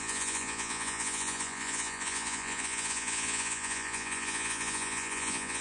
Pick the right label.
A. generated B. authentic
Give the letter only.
A